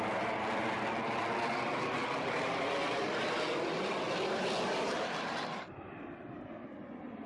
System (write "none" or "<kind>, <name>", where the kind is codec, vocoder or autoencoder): none